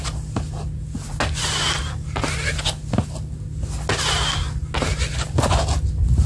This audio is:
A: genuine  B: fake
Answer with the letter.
A